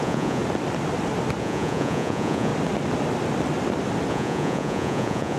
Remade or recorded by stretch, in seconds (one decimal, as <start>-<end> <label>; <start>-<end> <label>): 0.0-0.4 remade; 0.4-1.4 recorded; 1.4-2.5 remade; 2.5-4.1 recorded; 4.1-5.4 remade